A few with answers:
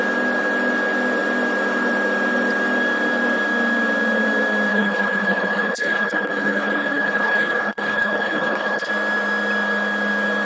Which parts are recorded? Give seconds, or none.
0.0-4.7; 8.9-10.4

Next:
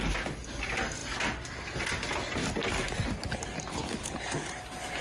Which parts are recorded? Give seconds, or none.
0.0-3.7; 4.5-5.0

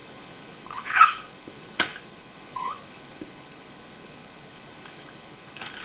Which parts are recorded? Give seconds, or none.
none

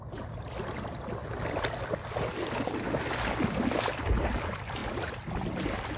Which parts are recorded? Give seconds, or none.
0.0-6.0

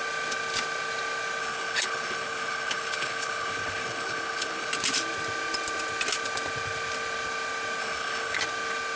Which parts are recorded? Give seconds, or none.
0.0-1.4; 4.7-7.8; 8.4-9.0

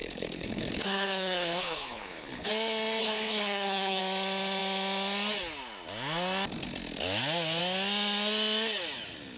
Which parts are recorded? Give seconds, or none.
2.5-3.0; 4.0-9.4

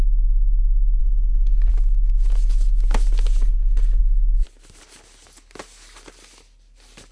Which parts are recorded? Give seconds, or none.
0.0-1.0; 1.7-3.4; 4.0-7.1